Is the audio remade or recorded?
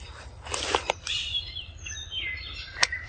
recorded